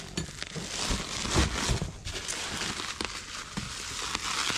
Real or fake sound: real